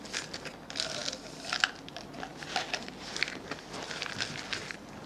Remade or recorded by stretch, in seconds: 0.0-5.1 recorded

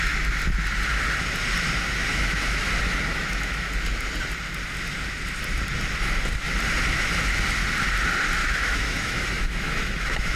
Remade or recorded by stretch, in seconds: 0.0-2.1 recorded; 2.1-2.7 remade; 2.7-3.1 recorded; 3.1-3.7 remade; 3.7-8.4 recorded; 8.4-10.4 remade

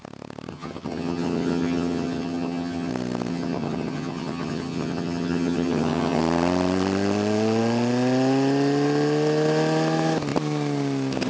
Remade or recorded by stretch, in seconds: 0.0-0.5 recorded; 0.5-2.9 remade; 2.9-3.3 recorded; 3.3-6.2 remade; 6.2-11.3 recorded

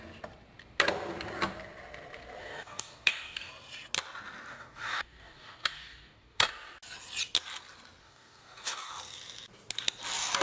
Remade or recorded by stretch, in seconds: 0.0-2.4 recorded; 2.4-3.5 remade; 3.5-4.5 recorded; 4.5-6.5 remade; 6.5-8.0 recorded; 8.0-8.9 remade; 8.9-10.4 recorded

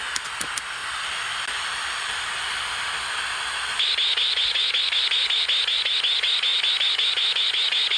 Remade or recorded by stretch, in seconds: 0.0-0.8 recorded; 0.8-2.7 remade; 2.7-8.0 recorded

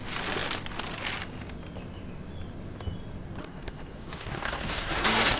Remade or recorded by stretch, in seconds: 0.0-3.4 recorded; 3.4-5.4 remade

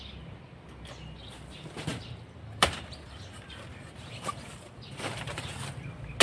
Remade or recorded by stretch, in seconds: 0.0-1.9 recorded; 1.9-5.6 remade; 5.6-6.2 recorded